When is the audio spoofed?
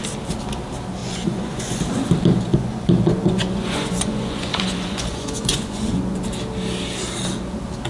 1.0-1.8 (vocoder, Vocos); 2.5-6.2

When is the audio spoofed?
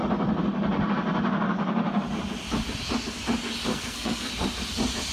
3.7-4.3 (codec, SNAC)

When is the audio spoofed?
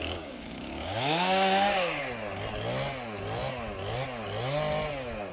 0.0-2.0 (codec, DAC)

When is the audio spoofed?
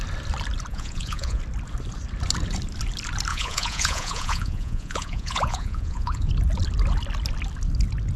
0.7-1.4 (vocoder, Vocos); 3.3-6.3